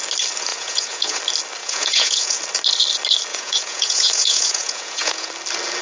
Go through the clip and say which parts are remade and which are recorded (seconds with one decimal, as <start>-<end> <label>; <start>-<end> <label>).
0.0-0.5 recorded; 0.5-1.2 remade; 1.2-1.6 recorded; 1.6-2.4 remade; 2.4-3.3 recorded; 3.3-5.3 remade; 5.3-5.8 recorded